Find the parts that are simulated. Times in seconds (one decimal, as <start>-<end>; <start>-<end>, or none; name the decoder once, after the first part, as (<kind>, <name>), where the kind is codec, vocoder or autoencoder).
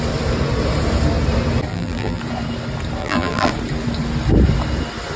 1.7-2.2 (vocoder, BigVGAN v2); 3.0-3.5